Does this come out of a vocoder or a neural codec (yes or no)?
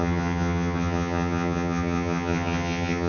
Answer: yes